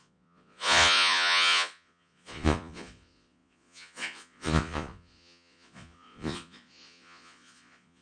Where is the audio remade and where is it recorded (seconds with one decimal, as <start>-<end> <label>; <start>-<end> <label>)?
0.0-8.0 remade